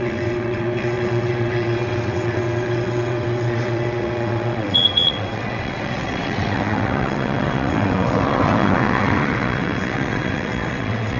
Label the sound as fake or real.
fake